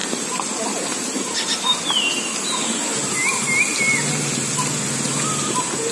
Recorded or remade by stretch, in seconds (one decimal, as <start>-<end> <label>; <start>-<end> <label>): 0.0-5.9 recorded